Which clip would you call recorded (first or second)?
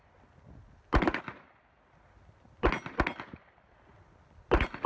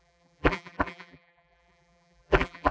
first